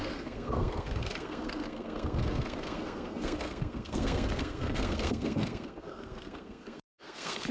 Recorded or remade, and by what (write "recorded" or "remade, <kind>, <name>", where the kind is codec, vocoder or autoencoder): remade, codec, SNAC